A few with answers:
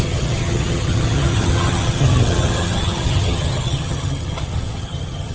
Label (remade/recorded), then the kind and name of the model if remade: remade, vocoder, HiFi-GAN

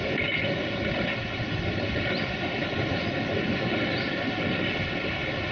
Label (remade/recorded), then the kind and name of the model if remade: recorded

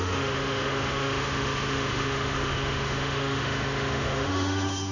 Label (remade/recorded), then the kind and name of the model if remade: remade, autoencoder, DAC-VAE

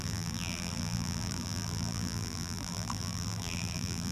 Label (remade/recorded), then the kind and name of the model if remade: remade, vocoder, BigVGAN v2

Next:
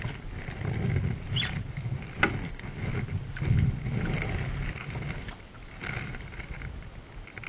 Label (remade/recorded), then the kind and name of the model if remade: recorded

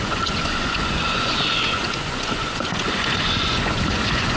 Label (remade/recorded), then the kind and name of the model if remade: remade, vocoder, Vocos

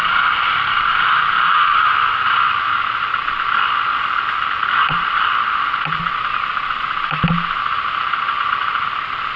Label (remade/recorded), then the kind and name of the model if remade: recorded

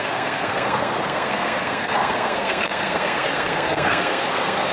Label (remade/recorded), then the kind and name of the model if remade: remade, codec, SNAC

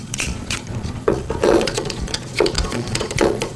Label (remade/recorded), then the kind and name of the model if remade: remade, vocoder, Vocos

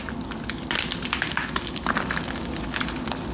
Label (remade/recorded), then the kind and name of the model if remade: recorded